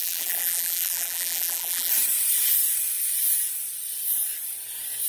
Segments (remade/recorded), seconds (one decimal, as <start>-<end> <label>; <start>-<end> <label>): 0.0-1.9 remade; 1.9-5.1 recorded